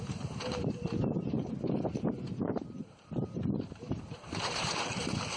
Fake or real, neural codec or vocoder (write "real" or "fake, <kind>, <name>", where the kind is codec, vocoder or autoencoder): fake, vocoder, BigVGAN v2